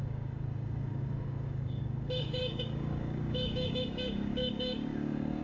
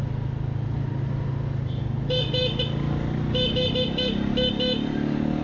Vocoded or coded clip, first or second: first